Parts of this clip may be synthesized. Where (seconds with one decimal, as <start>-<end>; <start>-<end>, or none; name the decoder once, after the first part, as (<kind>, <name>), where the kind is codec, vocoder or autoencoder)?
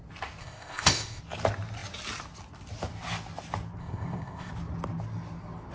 0.4-1.2 (codec, ZipCodec); 3.8-4.5